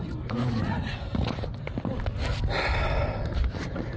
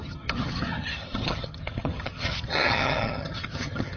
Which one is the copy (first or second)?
second